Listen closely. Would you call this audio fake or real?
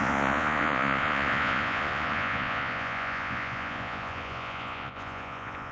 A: fake